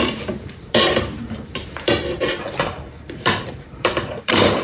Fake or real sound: fake